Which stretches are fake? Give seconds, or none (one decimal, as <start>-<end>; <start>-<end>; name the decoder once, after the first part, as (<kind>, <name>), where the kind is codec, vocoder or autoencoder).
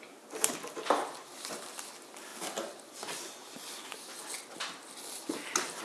none